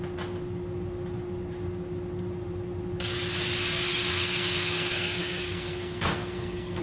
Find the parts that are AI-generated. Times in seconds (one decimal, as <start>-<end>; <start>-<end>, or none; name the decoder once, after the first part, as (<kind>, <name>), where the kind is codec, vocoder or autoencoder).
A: 4.1-6.8 (codec, SNAC)

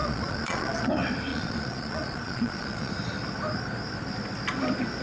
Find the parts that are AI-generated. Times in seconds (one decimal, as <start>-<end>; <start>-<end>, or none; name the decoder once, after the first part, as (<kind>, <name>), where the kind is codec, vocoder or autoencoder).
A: 0.0-0.9 (vocoder, Vocos); 1.3-2.9

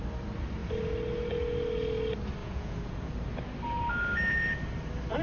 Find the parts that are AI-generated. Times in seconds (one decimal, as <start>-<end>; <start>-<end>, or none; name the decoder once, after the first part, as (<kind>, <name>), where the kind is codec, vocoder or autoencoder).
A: 2.4-3.1 (vocoder, Vocos)

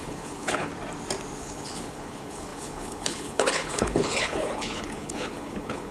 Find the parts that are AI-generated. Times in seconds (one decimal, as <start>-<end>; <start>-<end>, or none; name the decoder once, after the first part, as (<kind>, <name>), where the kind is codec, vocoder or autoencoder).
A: 0.0-0.7 (codec, HILCodec); 1.4-5.9

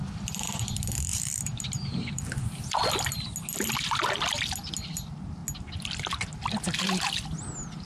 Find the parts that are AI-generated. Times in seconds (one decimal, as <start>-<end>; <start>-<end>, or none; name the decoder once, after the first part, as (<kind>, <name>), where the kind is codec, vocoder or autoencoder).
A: 1.1-2.2 (vocoder, BigVGAN v2)